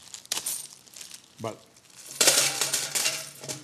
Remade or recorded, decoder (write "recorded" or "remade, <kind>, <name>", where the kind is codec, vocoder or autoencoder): remade, vocoder, BigVGAN v2